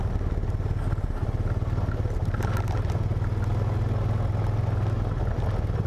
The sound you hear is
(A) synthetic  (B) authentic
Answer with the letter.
B